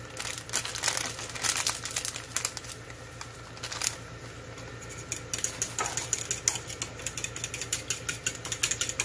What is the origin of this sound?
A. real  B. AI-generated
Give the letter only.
A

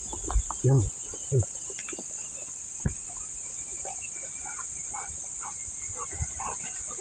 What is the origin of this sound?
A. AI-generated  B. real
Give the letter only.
B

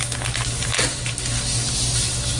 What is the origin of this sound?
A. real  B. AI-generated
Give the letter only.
A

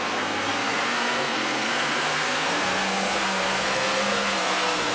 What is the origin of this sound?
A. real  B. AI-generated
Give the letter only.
B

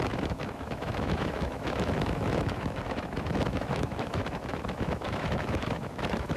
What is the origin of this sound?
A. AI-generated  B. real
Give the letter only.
A